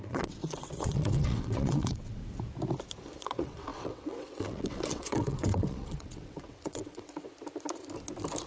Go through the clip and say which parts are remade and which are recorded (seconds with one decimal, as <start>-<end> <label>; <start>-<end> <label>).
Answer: 0.0-2.2 remade; 2.2-3.2 recorded; 3.2-7.3 remade; 7.3-8.5 recorded